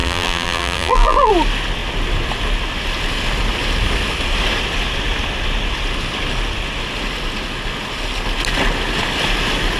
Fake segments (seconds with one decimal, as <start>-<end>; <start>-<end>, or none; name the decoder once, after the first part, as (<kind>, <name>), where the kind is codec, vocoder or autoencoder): 0.0-1.3 (vocoder, BigVGAN v2)